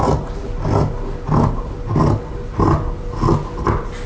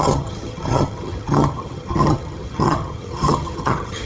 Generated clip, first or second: second